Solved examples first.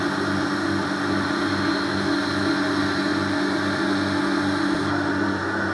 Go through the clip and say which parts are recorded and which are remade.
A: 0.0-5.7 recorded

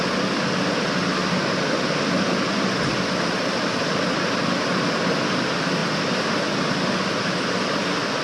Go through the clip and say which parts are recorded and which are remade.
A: 0.0-8.2 recorded

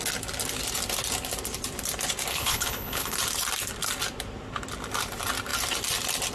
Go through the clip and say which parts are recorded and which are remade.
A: 0.0-2.3 recorded; 2.3-3.2 remade; 3.2-6.3 recorded

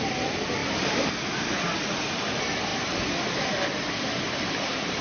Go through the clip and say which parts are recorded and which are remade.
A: 0.0-5.0 recorded

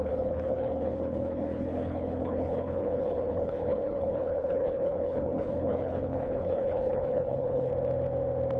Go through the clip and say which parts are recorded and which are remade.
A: 0.0-7.7 remade; 7.7-8.6 recorded

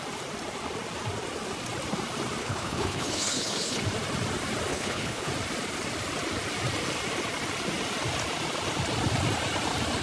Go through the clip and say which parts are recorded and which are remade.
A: 0.0-2.4 recorded; 2.4-3.8 remade; 3.8-4.7 recorded; 4.7-5.3 remade; 5.3-10.0 recorded

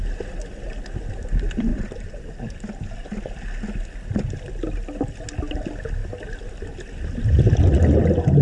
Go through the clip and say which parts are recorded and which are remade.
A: 0.0-8.4 recorded